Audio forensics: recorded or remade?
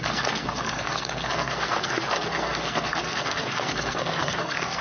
remade